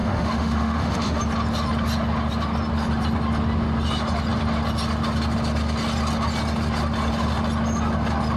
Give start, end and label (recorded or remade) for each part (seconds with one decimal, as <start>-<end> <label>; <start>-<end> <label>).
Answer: 0.0-1.2 remade; 1.2-8.4 recorded